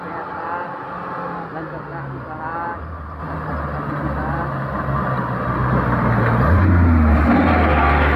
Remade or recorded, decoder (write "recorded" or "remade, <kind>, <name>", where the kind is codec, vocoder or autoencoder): recorded